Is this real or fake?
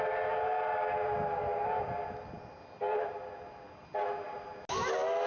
real